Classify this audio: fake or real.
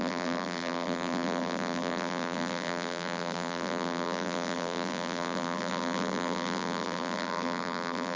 fake